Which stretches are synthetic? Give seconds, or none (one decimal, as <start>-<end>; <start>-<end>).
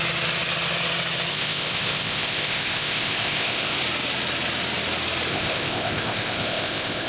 1.3-3.8; 5.3-7.1